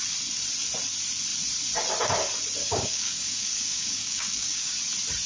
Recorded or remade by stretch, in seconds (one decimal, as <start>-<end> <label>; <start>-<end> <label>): 0.0-2.6 recorded; 2.6-4.7 remade; 4.7-5.3 recorded